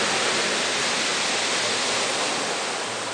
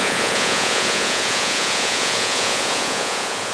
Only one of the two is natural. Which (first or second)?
first